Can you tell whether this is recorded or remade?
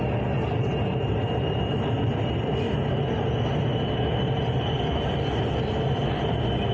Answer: recorded